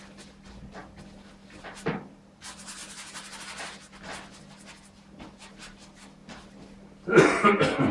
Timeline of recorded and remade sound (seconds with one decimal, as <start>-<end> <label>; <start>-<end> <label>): 0.0-7.9 recorded